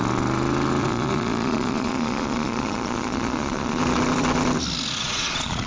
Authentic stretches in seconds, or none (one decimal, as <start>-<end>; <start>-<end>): 0.0-0.8; 3.8-5.0